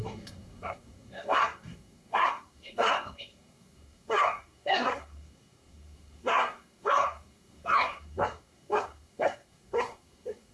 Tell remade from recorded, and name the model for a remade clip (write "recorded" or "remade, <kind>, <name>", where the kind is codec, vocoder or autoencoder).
remade, codec, SNAC